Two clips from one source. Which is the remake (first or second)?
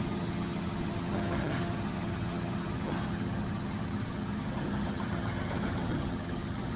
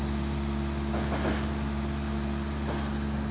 first